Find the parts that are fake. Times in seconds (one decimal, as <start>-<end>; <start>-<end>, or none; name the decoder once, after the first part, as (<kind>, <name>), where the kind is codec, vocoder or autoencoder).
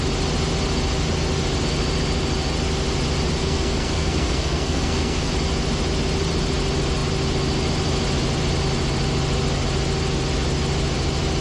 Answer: 3.4-5.3 (codec, SNAC)